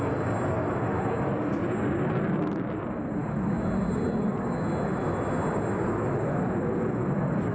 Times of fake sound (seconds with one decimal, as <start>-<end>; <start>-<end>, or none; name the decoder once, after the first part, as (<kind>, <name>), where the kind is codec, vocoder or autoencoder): none